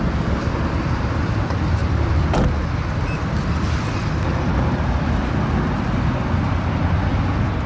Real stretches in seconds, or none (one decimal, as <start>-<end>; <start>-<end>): 0.0-7.7